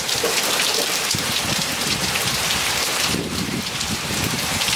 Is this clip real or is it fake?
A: fake